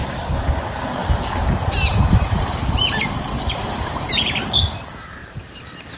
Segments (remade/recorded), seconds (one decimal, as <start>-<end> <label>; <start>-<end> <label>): 0.0-0.5 remade; 0.5-1.0 recorded; 1.0-1.5 remade; 1.5-1.9 recorded; 1.9-4.8 remade; 4.8-5.2 recorded; 5.2-6.0 remade